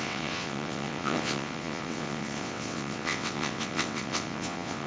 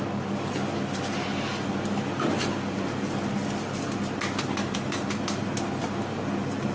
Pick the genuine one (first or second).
second